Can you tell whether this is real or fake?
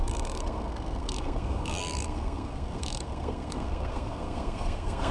fake